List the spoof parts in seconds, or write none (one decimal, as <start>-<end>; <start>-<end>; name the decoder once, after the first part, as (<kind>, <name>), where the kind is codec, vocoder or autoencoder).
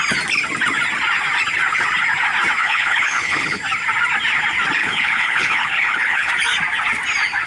2.6-3.6 (codec, HILCodec); 4.8-6.3